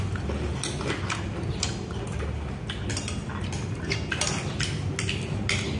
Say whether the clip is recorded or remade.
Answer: recorded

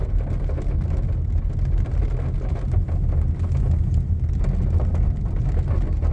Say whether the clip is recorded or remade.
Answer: recorded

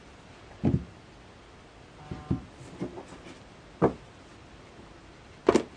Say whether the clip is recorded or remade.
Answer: recorded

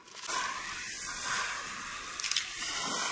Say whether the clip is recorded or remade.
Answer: recorded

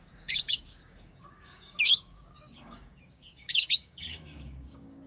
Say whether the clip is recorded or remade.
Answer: remade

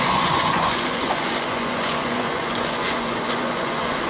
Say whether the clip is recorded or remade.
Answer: remade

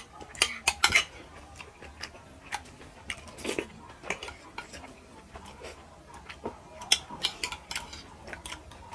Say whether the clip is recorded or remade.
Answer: recorded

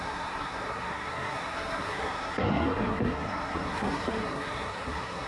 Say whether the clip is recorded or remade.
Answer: remade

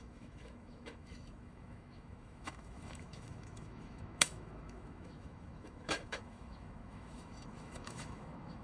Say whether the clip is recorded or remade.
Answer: remade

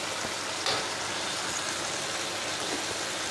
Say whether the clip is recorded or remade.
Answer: recorded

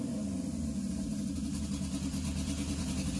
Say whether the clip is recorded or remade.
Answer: recorded